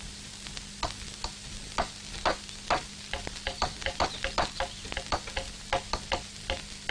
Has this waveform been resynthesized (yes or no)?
no